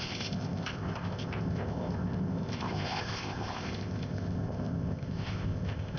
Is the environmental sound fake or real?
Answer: fake